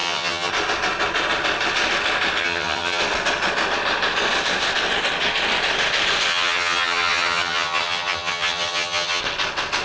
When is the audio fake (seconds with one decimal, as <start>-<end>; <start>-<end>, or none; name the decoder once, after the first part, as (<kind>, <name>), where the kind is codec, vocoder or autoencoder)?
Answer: 0.0-0.5 (vocoder, HiFi-GAN); 2.4-3.0; 6.3-9.2